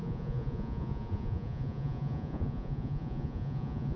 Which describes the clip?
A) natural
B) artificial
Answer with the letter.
B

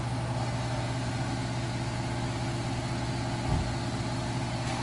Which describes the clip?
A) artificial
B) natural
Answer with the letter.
B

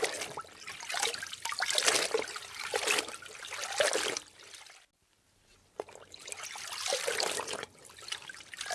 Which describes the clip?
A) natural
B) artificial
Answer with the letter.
A